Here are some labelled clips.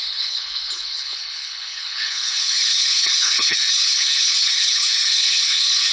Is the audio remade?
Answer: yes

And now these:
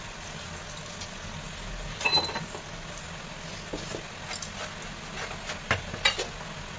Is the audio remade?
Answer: no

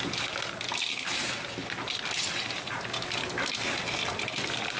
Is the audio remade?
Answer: no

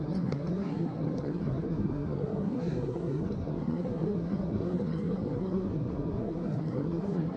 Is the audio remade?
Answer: yes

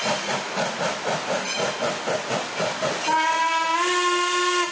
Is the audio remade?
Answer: no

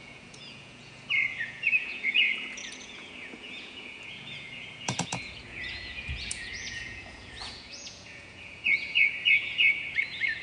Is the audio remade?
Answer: yes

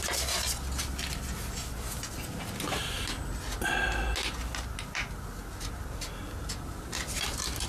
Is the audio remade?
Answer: no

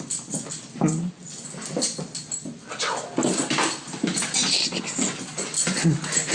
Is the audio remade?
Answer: no